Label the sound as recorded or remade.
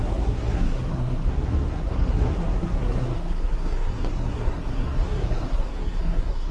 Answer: remade